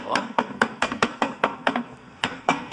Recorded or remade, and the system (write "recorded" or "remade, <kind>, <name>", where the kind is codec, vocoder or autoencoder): remade, codec, SNAC